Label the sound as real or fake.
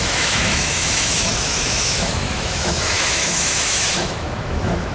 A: fake